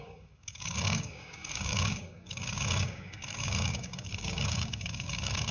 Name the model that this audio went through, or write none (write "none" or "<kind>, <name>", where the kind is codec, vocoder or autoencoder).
codec, DAC